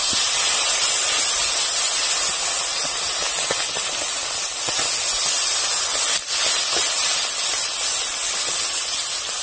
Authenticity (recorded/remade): recorded